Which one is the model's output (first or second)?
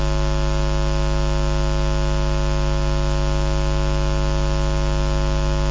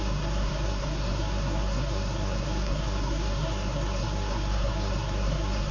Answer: second